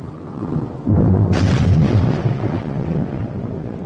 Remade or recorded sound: remade